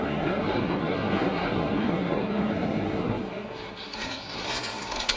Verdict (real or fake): fake